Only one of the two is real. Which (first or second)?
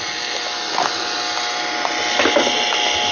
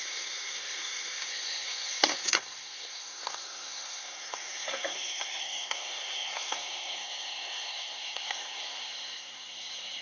first